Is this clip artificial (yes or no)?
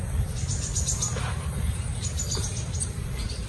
no